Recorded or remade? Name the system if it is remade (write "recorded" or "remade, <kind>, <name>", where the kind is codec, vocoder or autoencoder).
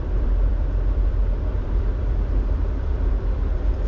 remade, vocoder, BigVGAN v2